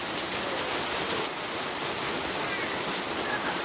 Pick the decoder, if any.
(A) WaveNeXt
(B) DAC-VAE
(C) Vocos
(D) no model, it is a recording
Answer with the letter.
D